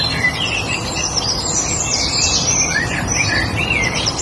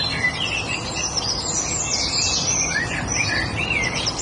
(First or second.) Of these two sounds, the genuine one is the second